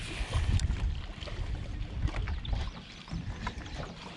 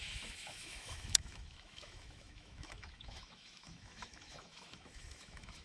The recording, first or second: first